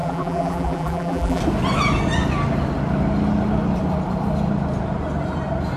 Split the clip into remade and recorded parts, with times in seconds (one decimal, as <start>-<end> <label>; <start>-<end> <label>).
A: 0.0-1.4 remade; 1.4-5.8 recorded